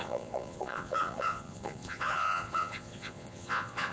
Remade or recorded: remade